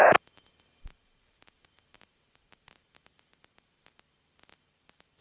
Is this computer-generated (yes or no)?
no